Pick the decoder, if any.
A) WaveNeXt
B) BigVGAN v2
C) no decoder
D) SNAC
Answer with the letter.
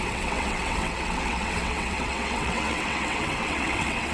A